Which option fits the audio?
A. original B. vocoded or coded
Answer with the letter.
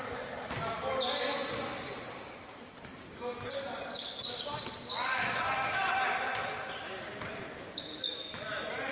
A